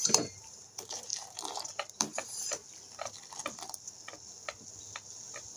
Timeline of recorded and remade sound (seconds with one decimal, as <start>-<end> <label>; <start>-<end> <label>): 0.0-2.6 remade; 2.6-5.6 recorded